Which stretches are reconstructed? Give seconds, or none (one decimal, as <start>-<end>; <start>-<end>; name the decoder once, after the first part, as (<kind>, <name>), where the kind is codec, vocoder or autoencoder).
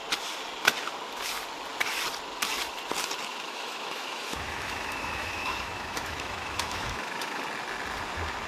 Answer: 3.3-7.4 (autoencoder, DAC-VAE)